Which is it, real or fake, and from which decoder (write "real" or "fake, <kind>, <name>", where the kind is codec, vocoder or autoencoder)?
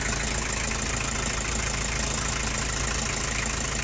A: real